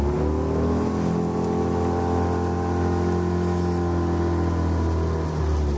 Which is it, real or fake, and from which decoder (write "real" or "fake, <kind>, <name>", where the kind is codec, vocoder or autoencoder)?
real